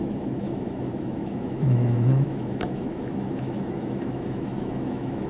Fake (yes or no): yes